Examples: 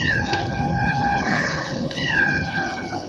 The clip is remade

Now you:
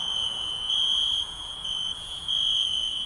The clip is remade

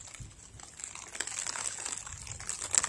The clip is recorded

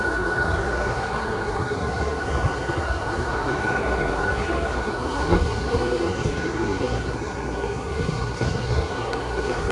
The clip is remade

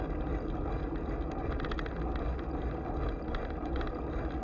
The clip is recorded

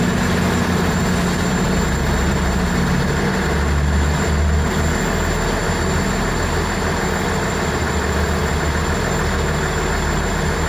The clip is recorded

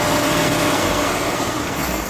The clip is remade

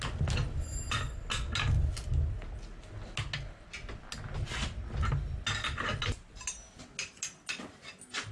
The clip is recorded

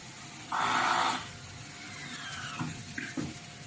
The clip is recorded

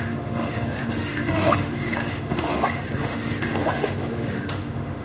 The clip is remade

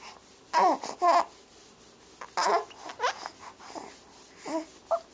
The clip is recorded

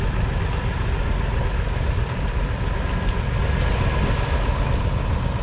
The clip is recorded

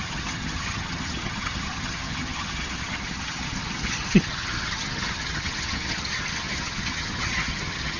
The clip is remade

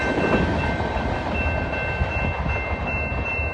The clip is recorded